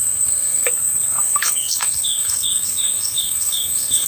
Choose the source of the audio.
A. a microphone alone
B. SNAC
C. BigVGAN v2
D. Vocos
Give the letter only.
B